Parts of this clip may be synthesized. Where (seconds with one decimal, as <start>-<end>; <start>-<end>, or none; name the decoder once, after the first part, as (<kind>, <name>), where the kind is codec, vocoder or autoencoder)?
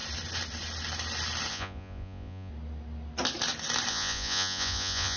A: 1.5-2.5 (vocoder, Vocos); 3.9-5.2